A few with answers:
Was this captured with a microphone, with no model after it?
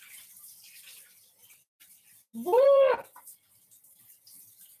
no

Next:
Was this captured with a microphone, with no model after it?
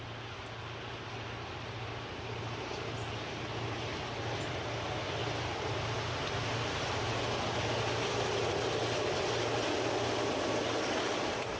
yes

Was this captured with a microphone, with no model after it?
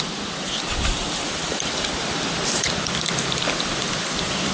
no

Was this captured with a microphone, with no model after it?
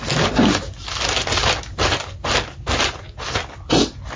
yes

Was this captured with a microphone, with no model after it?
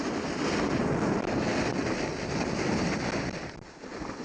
yes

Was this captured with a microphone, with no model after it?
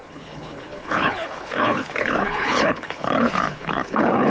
no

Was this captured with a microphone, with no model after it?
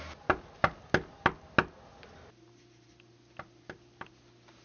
yes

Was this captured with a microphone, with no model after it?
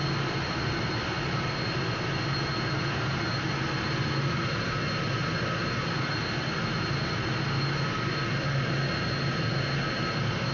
yes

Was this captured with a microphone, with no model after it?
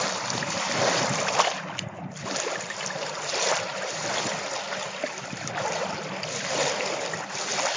yes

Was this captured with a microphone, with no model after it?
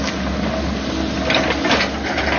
yes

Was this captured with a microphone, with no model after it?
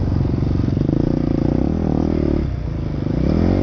yes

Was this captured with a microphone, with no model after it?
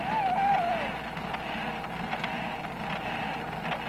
yes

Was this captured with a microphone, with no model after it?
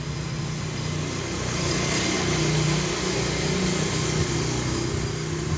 yes